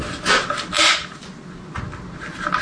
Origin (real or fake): real